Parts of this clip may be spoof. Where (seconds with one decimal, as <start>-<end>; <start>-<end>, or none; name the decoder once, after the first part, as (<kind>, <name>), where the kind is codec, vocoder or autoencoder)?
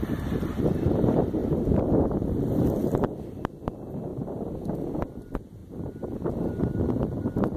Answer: 0.0-1.4 (vocoder, BigVGAN v2); 2.5-4.1; 5.1-7.6